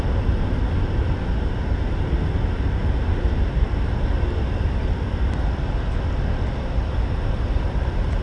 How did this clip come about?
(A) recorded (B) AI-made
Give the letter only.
A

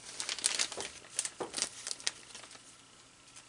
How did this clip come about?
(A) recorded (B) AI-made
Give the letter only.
A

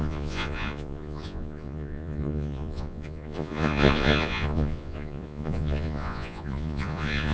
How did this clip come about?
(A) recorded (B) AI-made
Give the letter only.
B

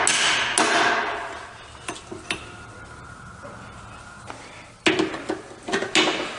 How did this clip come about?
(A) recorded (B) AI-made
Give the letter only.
A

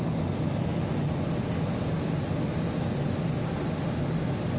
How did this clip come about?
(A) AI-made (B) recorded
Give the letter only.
B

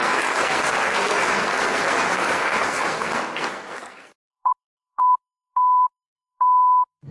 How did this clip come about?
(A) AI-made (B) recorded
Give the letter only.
A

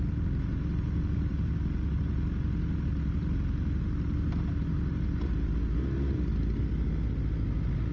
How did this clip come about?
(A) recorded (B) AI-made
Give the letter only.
A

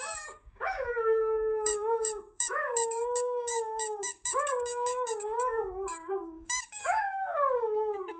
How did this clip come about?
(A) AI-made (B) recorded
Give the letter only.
A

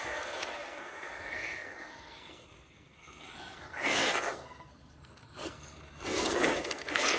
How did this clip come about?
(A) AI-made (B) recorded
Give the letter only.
A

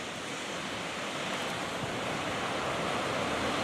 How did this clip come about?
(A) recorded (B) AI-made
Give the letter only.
A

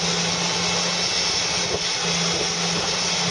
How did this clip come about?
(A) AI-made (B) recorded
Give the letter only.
B